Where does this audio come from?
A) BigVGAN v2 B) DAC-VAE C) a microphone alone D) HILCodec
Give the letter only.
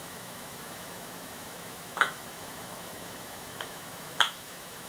B